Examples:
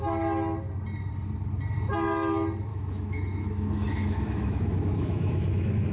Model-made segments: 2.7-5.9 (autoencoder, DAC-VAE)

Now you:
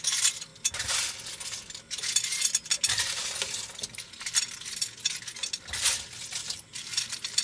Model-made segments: 6.4-7.4 (vocoder, BigVGAN v2)

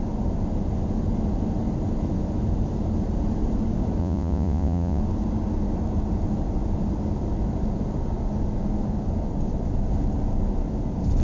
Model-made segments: 4.0-5.0 (vocoder, Vocos)

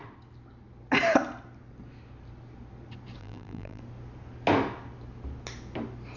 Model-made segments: 3.2-3.8 (vocoder, BigVGAN v2)

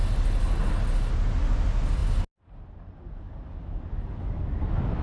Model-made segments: none